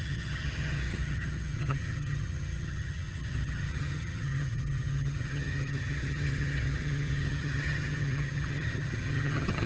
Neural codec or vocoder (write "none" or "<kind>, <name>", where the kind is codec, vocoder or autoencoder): vocoder, HiFi-GAN